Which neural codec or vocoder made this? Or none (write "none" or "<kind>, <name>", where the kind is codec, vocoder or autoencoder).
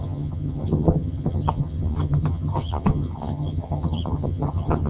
vocoder, HiFi-GAN